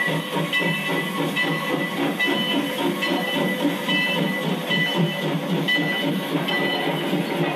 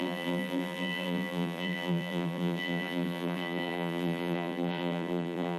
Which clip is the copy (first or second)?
second